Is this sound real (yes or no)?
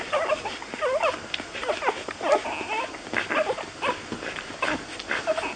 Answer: yes